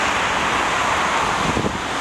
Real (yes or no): yes